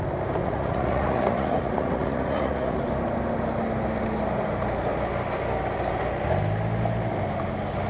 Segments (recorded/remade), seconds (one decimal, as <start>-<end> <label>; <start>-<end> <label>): 0.0-0.4 recorded; 0.4-2.8 remade; 2.8-7.9 recorded